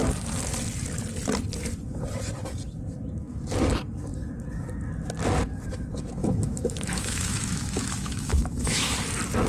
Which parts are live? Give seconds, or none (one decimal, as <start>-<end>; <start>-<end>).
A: 0.0-6.2; 8.9-9.5